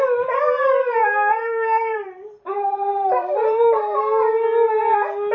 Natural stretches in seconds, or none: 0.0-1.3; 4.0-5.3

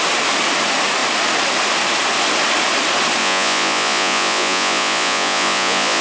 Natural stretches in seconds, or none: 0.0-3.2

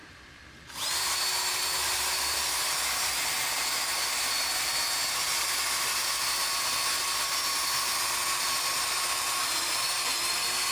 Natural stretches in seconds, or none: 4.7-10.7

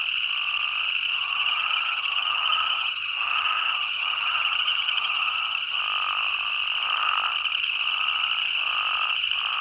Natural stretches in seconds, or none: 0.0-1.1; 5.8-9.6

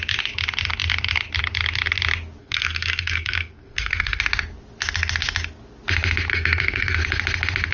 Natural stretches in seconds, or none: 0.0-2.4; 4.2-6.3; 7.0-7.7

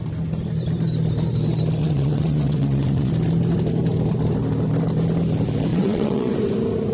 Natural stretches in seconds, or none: 0.0-1.8; 3.1-5.7; 6.3-6.9